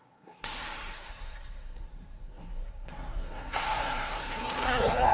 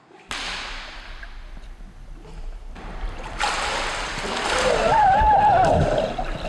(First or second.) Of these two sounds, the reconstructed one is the first